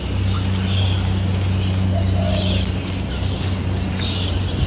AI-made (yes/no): no